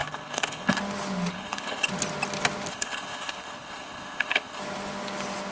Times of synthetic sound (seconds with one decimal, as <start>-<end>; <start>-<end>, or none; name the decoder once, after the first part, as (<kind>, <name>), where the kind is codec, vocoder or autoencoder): 0.0-0.8 (codec, HILCodec); 1.3-1.9; 2.7-4.6

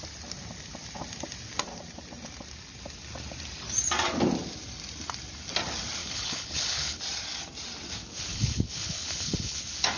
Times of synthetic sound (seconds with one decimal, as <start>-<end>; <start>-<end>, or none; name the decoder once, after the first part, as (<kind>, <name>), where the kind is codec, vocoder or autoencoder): 6.0-7.0 (codec, HILCodec); 8.3-9.6

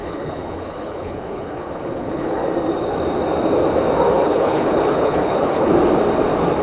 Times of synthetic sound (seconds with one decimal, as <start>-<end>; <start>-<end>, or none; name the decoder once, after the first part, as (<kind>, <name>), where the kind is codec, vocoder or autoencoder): 0.0-2.4 (codec, HILCodec); 4.1-5.7

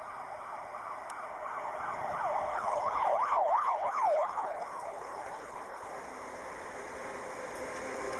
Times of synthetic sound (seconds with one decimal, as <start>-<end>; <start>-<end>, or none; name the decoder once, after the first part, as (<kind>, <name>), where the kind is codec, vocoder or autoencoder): 2.5-5.9 (codec, HILCodec)

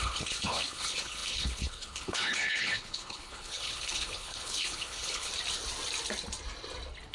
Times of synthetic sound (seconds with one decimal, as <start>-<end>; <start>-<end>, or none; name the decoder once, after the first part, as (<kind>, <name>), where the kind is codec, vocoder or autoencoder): 0.0-5.3 (codec, HILCodec)

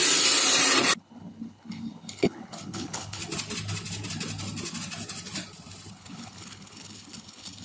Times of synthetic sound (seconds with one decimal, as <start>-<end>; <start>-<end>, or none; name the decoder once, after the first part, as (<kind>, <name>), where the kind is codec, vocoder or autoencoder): 1.0-3.2 (codec, HILCodec); 5.9-7.6

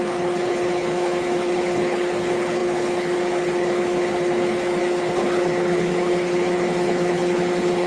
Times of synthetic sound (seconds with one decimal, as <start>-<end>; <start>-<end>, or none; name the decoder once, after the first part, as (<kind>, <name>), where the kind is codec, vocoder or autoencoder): 0.0-7.9 (codec, HILCodec)